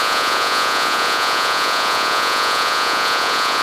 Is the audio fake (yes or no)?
yes